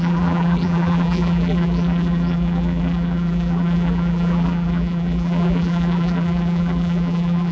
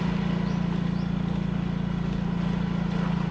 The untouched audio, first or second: second